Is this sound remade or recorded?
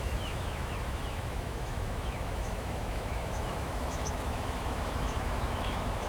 remade